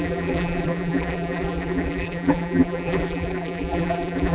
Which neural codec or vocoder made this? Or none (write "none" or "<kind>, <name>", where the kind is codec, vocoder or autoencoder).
vocoder, BigVGAN v2